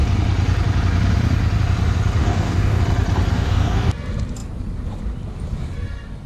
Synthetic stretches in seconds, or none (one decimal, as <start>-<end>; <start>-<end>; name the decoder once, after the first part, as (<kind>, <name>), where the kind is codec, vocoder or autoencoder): 2.2-2.8 (codec, DAC); 3.3-3.9